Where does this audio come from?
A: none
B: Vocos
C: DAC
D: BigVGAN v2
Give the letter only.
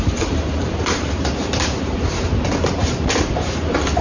D